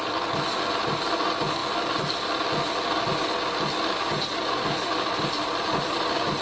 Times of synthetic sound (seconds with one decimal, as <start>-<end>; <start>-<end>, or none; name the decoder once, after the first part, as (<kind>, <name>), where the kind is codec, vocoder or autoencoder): none